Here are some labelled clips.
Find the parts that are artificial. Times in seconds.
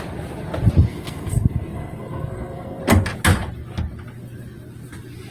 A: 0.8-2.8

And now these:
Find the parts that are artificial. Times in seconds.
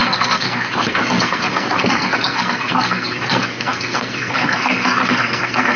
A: 0.0-5.8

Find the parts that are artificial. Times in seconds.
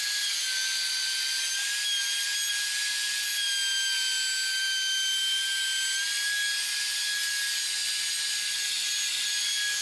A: none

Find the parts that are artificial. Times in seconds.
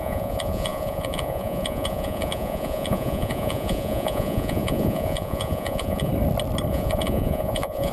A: 0.0-6.1; 6.7-7.9